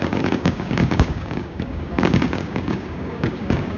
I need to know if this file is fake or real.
fake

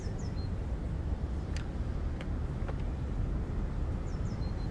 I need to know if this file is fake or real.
real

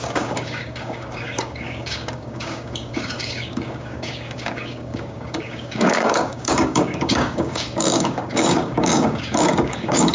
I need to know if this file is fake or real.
fake